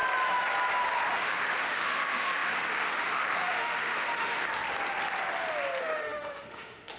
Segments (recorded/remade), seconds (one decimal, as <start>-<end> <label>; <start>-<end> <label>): 0.0-1.1 recorded; 1.1-4.5 remade; 4.5-5.8 recorded; 5.8-7.0 remade